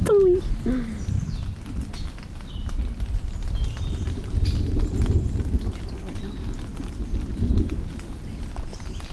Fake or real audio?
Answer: real